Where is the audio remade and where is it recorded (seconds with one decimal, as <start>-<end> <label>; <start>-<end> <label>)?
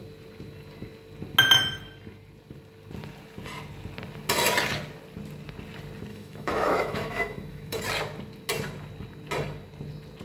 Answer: 0.0-6.1 recorded; 6.1-7.8 remade; 7.8-10.2 recorded